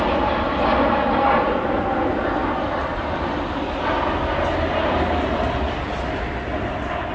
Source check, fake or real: real